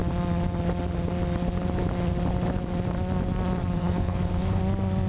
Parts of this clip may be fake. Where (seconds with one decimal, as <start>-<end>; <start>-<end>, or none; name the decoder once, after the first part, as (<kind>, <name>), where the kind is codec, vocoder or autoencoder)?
3.8-4.6 (codec, HILCodec)